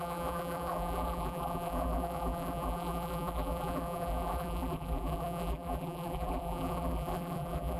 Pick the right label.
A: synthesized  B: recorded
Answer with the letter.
A